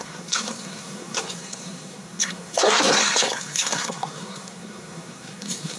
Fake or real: fake